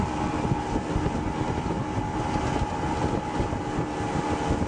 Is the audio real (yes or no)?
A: yes